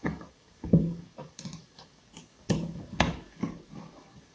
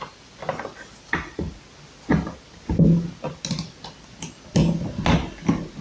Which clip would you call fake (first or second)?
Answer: first